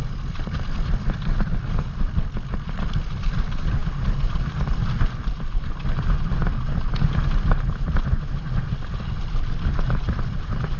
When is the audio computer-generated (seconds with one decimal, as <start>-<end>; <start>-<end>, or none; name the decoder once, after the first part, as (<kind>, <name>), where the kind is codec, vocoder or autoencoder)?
none